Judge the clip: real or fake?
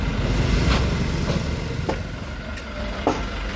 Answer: real